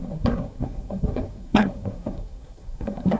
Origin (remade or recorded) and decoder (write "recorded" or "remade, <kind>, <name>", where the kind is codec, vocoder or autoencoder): remade, codec, SNAC